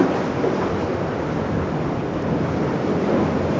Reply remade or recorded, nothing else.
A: recorded